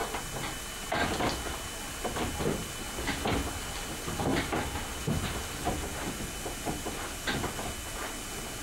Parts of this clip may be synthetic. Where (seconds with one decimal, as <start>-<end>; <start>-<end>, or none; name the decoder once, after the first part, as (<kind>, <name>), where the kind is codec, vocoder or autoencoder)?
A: none